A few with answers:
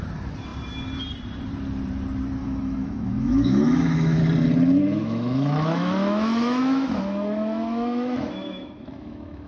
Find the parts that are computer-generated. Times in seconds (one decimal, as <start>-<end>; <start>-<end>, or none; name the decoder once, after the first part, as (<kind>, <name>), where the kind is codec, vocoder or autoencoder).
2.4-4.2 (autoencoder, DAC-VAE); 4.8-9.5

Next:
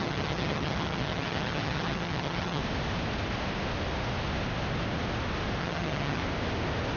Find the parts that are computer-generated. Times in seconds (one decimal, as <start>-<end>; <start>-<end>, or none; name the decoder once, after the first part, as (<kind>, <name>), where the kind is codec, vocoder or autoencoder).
0.0-2.6 (vocoder, HiFi-GAN); 5.6-6.2

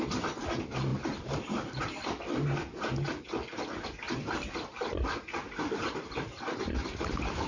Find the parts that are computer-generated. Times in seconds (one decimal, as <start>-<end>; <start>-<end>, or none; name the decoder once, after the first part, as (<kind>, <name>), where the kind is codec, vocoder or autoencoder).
none

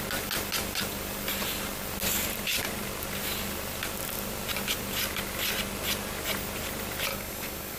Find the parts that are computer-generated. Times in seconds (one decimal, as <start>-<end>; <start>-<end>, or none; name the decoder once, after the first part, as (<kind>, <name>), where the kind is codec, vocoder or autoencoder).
7.1-7.8 (codec, DAC)

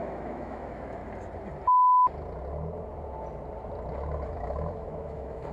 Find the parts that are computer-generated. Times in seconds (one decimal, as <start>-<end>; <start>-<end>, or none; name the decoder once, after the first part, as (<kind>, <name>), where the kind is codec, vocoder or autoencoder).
0.0-1.0 (autoencoder, DAC-VAE); 4.3-5.5